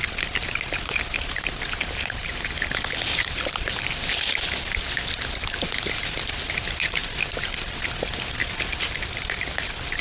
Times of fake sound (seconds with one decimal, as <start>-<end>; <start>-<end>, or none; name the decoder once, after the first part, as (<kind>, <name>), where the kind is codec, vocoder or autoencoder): none